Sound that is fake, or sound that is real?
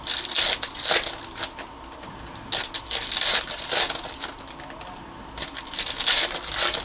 real